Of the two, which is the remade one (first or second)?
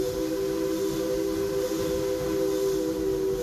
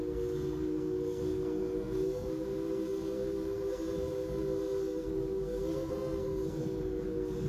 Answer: second